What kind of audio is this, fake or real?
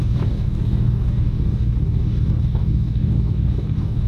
fake